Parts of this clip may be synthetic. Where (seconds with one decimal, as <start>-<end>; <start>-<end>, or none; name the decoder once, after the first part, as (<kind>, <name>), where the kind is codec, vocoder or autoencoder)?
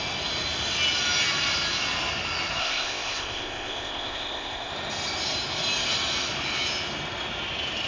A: 2.6-4.7 (codec, ZipCodec)